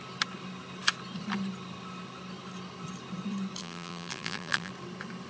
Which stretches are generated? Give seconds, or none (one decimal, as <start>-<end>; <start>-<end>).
3.6-4.7